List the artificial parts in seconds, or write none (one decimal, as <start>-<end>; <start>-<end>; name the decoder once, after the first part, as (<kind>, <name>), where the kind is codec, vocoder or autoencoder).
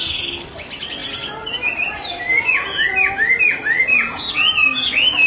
none